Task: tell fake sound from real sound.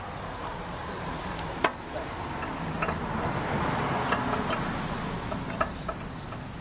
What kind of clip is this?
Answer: real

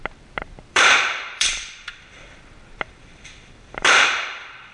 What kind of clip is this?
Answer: fake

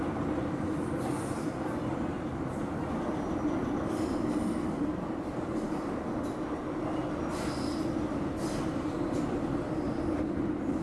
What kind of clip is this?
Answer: real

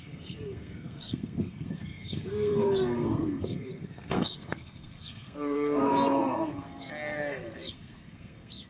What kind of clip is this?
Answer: fake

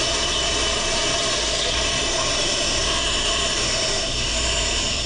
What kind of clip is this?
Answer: fake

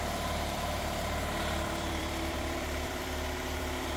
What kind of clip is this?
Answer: fake